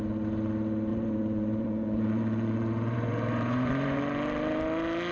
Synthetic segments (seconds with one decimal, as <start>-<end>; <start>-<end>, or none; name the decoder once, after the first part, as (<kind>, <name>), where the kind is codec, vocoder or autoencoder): 0.9-4.0 (vocoder, Vocos)